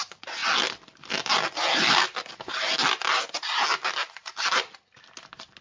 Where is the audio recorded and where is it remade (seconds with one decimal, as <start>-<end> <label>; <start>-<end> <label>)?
0.0-0.4 recorded; 0.4-2.3 remade; 2.3-5.6 recorded